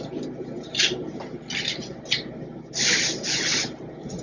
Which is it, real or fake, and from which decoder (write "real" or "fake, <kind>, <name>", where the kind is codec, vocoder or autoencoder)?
real